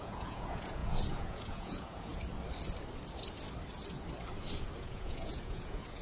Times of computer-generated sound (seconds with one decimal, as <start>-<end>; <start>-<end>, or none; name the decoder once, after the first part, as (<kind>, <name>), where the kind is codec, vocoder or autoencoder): 0.0-2.1 (vocoder, Vocos); 4.8-6.0